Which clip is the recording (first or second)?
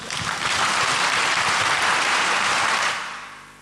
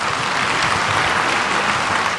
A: second